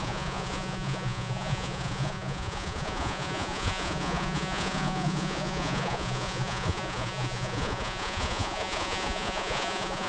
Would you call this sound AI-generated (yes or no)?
yes